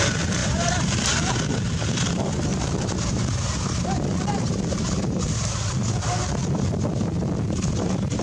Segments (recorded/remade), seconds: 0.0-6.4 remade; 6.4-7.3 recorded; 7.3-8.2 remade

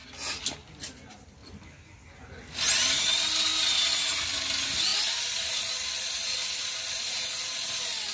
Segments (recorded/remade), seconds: 0.0-8.1 recorded

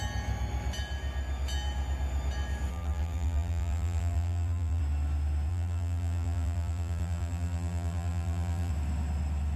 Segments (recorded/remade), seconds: 0.0-2.7 recorded; 2.7-4.8 remade; 4.8-5.5 recorded; 5.5-8.7 remade; 8.7-9.6 recorded

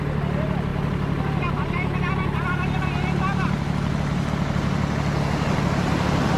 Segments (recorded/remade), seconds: 0.0-6.4 recorded

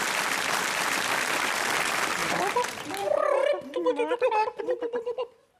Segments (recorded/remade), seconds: 0.0-5.6 remade

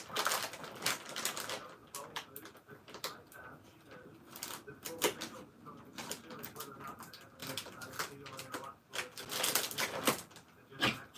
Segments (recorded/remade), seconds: 0.0-11.2 recorded

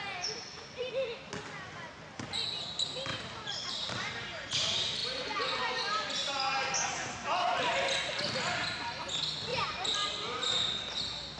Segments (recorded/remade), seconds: 0.0-3.1 recorded; 3.1-4.5 remade; 4.5-9.5 recorded; 9.5-10.7 remade; 10.7-11.4 recorded